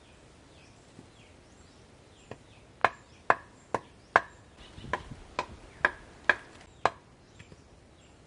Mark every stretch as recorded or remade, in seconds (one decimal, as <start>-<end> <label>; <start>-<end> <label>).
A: 0.0-8.3 recorded